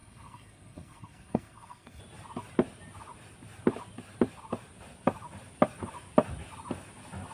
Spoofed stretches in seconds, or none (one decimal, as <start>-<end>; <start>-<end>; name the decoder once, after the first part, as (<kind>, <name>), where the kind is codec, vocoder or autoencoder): 0.0-2.0 (codec, SNAC)